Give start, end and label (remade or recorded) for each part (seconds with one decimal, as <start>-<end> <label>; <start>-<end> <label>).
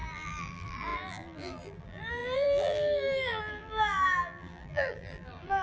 0.0-5.6 remade